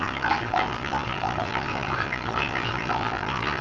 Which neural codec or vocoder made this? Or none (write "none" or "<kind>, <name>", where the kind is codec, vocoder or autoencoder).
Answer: vocoder, Vocos